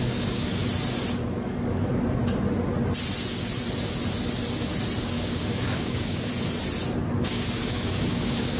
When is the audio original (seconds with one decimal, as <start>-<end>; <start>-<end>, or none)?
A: 0.6-1.4; 1.9-5.0; 6.3-7.1